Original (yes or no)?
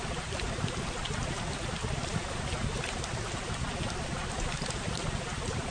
yes